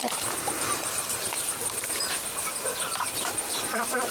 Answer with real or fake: fake